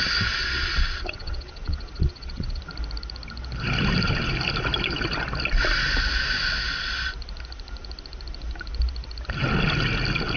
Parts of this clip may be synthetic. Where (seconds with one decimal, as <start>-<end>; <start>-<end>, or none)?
0.4-2.6